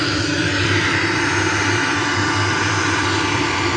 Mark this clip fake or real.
fake